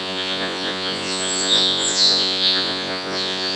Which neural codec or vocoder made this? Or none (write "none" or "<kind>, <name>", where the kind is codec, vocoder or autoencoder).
vocoder, Vocos